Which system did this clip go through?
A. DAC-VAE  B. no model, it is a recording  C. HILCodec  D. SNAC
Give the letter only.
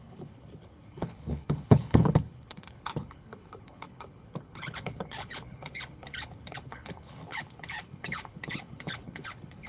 C